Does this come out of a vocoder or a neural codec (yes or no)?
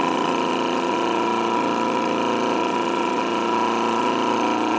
yes